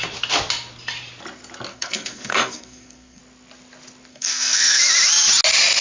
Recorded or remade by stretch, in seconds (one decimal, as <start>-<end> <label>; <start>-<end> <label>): 0.0-1.7 recorded; 1.7-3.2 remade; 3.2-4.1 recorded; 4.1-4.8 remade; 4.8-5.8 recorded